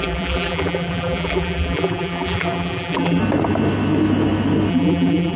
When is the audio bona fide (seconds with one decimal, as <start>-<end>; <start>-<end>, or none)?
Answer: 3.2-4.7